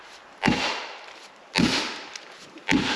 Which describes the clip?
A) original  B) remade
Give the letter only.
A